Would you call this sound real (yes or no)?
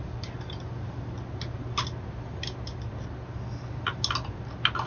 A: yes